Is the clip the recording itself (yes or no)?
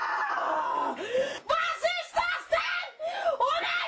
yes